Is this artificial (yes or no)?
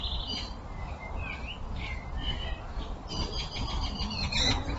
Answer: yes